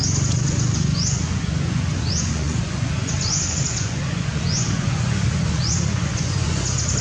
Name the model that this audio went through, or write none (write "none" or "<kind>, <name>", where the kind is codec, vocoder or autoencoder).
vocoder, Vocos